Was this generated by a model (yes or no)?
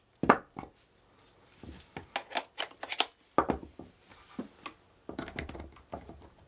no